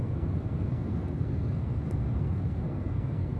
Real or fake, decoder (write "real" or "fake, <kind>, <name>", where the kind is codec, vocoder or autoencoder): fake, codec, SNAC